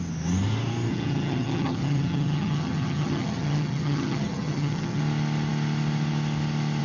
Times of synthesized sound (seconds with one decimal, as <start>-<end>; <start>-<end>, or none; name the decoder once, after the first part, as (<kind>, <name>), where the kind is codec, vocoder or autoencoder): 0.9-5.0 (vocoder, HiFi-GAN)